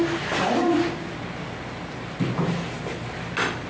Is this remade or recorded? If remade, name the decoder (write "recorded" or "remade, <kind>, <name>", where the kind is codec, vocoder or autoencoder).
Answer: recorded